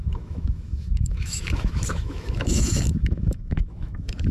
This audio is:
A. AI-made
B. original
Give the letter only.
A